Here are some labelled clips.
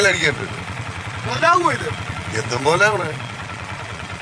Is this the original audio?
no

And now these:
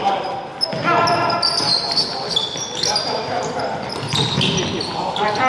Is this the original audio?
yes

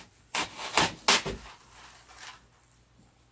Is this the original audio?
yes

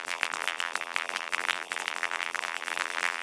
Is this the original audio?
no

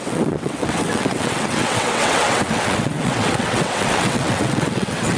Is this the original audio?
no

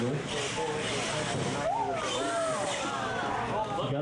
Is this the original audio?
yes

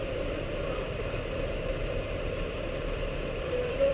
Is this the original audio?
no